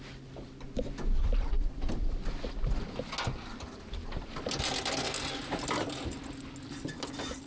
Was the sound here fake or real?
real